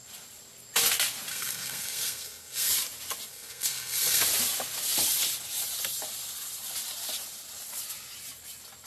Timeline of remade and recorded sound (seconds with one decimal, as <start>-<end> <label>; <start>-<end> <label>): 0.0-1.3 recorded; 1.3-2.7 remade; 2.7-3.3 recorded; 3.3-4.2 remade; 4.2-8.9 recorded